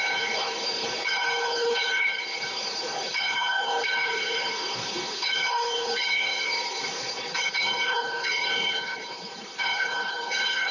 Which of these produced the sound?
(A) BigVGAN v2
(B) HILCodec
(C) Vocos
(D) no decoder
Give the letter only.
B